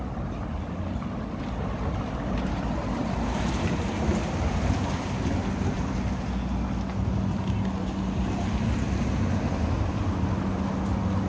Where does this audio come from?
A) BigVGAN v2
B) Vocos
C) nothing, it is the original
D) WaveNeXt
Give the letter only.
C